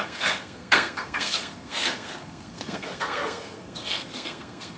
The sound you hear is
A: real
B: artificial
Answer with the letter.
B